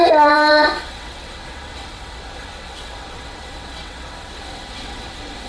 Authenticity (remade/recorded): remade